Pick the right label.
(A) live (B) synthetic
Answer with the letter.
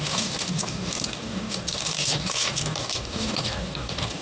B